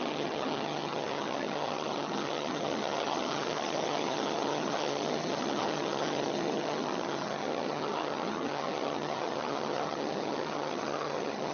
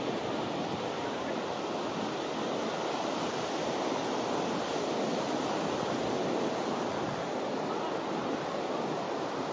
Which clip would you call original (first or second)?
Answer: second